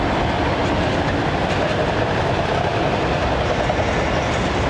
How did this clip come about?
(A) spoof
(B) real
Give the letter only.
B